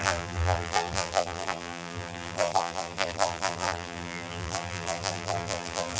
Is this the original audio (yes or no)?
no